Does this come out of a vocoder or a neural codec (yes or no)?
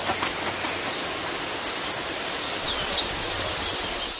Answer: no